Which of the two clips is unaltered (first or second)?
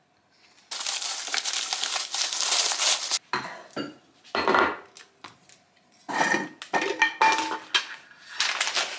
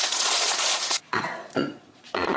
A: first